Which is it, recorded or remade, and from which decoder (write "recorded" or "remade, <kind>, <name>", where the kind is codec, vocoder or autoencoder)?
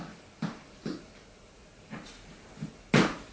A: recorded